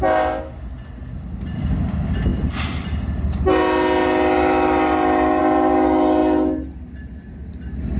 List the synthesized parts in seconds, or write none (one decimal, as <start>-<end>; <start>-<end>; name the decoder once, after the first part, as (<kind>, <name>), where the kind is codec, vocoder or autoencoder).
none